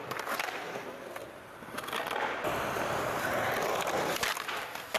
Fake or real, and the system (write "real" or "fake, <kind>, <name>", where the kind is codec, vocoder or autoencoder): real